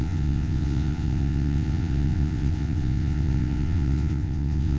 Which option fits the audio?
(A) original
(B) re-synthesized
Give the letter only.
B